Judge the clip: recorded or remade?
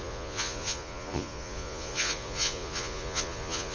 remade